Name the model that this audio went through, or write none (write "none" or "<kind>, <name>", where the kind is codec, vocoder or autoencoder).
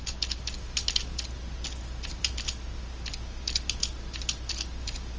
none